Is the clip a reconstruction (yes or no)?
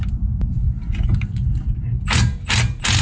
no